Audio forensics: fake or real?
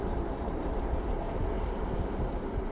fake